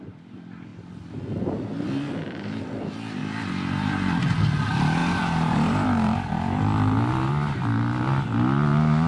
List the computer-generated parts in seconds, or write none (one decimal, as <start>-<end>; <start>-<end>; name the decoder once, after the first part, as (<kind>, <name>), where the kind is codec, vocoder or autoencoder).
5.0-6.3 (vocoder, BigVGAN v2)